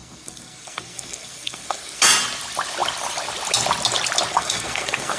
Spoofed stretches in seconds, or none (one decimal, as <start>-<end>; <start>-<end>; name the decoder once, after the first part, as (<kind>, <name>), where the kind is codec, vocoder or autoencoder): 0.0-2.0 (codec, SNAC); 4.3-5.2